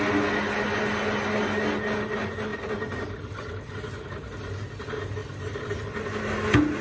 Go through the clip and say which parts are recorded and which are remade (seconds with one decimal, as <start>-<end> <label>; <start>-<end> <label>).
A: 0.0-6.8 recorded